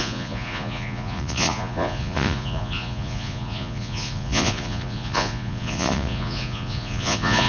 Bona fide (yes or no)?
no